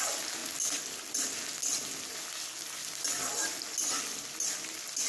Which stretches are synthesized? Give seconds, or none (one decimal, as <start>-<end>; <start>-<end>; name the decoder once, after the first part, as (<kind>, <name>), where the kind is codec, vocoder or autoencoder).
none